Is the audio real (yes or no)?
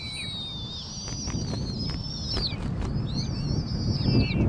yes